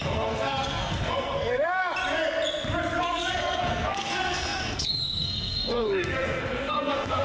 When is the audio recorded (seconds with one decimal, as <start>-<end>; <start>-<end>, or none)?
1.8-3.0